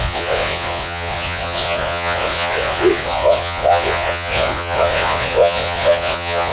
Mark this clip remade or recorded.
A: remade